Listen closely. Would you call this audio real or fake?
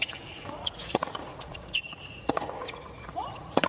fake